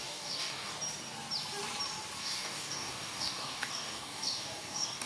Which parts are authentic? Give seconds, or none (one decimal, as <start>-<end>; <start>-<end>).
0.7-2.2